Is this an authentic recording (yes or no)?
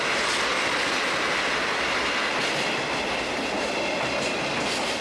yes